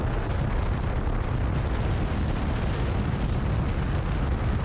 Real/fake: real